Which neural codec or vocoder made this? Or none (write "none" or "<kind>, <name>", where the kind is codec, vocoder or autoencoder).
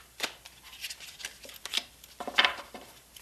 vocoder, BigVGAN v2